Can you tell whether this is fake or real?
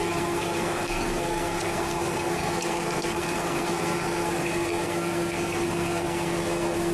fake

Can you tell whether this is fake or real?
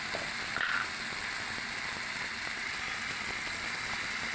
real